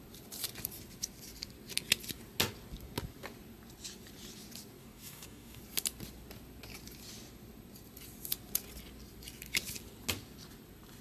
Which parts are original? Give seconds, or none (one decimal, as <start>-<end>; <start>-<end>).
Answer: 0.0-4.8; 5.6-11.0